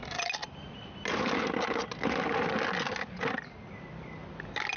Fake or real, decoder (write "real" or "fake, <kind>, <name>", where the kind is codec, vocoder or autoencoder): real